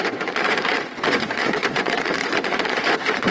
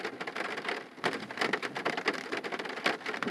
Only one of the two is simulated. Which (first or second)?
first